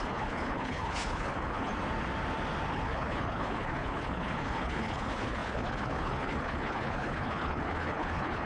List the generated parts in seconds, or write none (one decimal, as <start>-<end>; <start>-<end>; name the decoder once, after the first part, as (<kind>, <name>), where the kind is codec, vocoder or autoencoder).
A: 0.0-1.7 (codec, HILCodec); 2.7-8.5